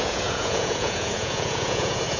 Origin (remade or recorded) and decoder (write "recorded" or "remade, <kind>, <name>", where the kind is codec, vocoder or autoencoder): remade, vocoder, Vocos